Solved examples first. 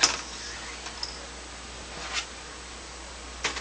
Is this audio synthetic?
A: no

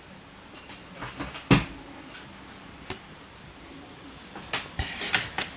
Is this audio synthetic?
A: no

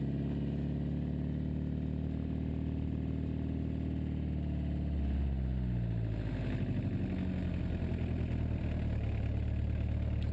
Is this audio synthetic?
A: no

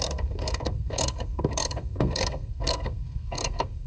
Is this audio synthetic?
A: yes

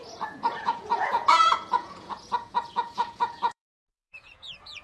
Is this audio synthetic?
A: yes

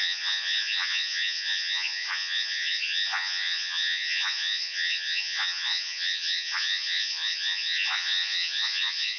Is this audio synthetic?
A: yes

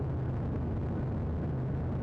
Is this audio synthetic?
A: no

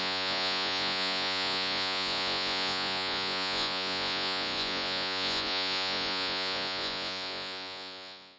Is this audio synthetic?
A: yes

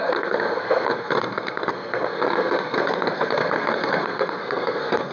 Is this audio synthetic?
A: yes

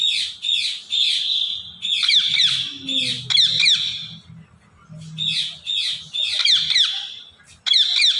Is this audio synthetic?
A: no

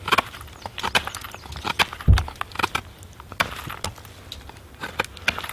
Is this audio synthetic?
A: no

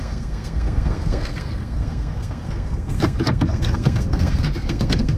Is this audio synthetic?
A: yes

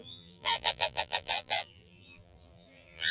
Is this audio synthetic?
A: yes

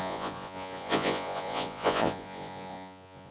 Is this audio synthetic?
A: yes